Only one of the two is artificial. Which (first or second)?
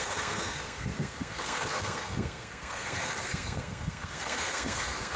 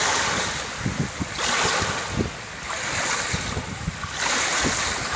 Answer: first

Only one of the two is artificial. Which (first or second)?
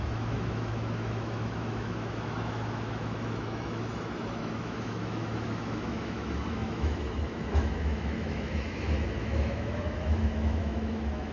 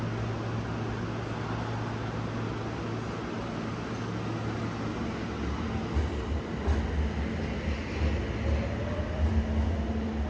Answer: first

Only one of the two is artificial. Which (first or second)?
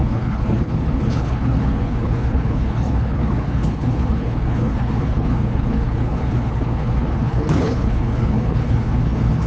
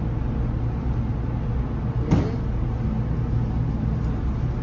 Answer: first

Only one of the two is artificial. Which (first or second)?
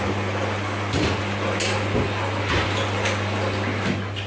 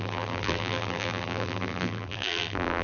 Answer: second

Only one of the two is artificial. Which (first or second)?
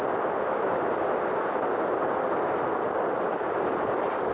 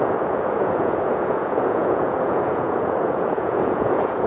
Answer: second